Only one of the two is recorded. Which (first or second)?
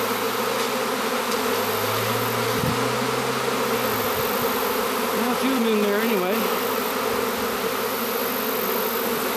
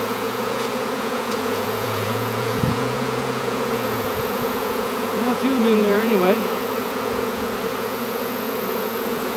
first